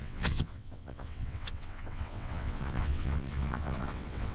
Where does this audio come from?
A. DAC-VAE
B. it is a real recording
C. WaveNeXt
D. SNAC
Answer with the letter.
C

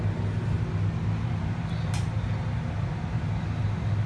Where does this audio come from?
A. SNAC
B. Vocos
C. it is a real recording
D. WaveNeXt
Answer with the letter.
C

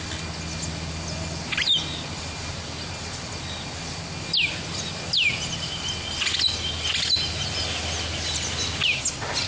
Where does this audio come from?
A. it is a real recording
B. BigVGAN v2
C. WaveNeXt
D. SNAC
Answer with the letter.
A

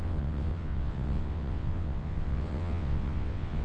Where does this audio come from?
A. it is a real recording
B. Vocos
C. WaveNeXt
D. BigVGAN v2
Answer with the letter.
C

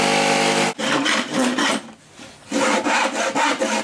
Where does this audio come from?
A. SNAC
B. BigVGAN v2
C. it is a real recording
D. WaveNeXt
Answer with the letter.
C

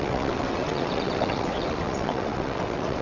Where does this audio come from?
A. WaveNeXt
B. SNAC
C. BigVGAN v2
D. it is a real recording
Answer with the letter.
A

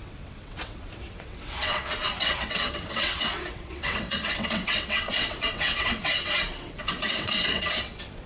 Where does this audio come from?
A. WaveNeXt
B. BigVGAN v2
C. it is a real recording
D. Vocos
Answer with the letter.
A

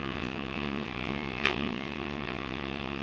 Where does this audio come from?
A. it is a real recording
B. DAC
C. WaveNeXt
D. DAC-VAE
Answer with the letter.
C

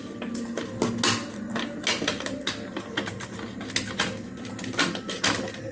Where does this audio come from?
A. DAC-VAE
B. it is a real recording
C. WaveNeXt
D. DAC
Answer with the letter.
B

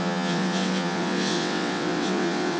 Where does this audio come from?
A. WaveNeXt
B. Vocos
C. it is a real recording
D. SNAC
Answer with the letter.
A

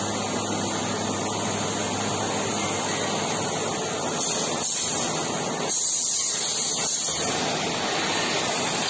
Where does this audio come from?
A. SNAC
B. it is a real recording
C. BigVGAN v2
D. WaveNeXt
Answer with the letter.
B